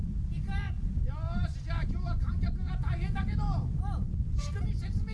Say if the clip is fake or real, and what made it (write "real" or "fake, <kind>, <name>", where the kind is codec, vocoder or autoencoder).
real